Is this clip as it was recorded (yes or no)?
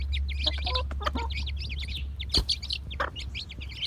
yes